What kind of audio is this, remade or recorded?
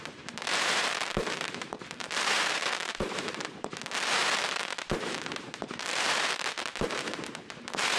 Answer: remade